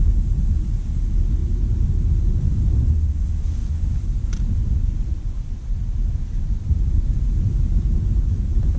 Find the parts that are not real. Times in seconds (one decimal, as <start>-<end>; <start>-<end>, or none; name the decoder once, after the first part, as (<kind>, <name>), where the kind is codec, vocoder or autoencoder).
none